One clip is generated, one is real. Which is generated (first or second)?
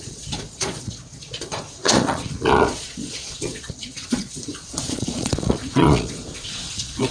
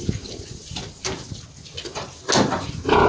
first